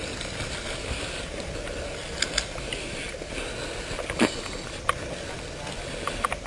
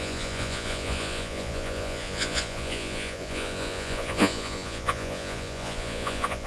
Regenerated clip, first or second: second